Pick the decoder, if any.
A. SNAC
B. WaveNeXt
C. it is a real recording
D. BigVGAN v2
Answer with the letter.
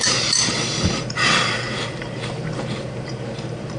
D